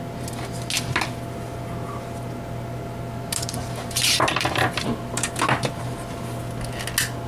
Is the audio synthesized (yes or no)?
no